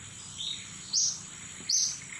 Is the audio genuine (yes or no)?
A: yes